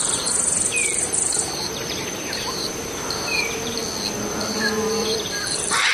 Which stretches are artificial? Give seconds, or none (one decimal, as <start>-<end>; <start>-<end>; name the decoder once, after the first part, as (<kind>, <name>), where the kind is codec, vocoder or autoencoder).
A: 0.0-3.8 (vocoder, BigVGAN v2); 4.5-5.9